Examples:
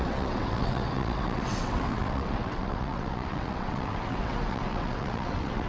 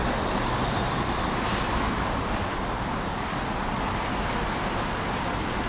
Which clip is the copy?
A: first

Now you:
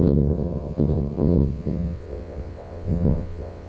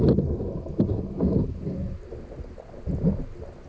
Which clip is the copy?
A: first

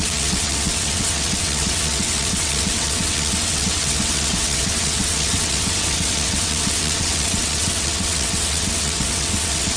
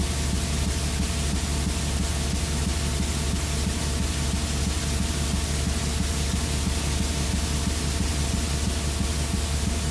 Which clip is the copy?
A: first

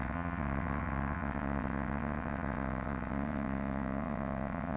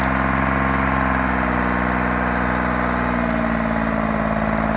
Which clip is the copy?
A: first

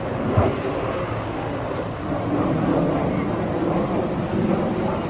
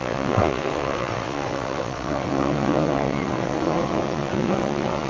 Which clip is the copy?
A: second